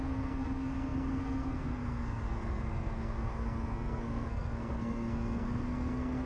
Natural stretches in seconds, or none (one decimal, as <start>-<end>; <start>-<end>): none